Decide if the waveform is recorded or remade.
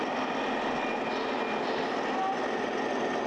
recorded